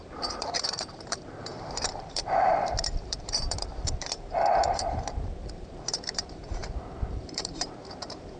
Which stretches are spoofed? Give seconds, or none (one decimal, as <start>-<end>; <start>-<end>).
0.0-6.6; 7.1-8.4

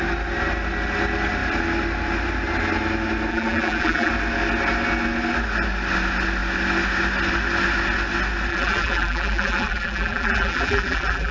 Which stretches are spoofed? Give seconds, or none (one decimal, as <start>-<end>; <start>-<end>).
3.3-4.1; 8.5-11.3